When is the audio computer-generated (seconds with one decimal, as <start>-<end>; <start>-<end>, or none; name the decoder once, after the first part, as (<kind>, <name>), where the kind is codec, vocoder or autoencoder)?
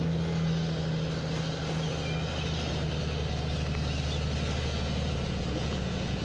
4.6-6.2 (vocoder, Vocos)